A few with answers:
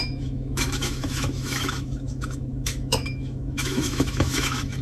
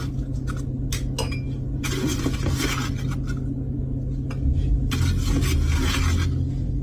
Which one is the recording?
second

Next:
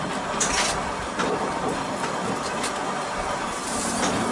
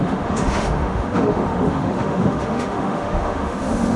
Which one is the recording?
first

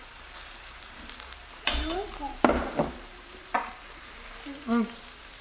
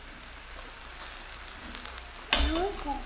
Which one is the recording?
second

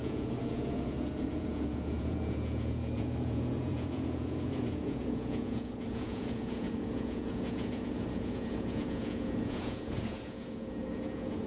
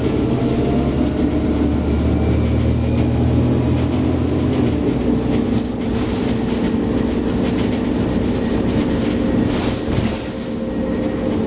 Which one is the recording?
second